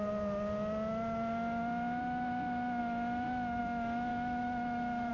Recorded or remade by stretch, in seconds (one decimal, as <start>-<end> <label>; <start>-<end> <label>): 0.0-4.1 recorded; 4.1-5.1 remade